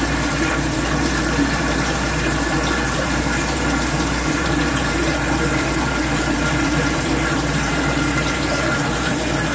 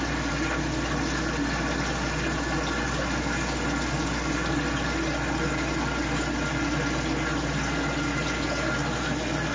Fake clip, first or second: first